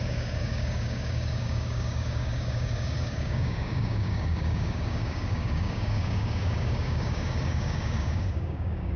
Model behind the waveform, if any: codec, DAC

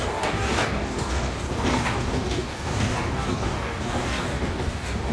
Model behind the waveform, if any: codec, DAC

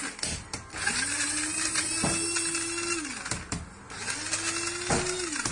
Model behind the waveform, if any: none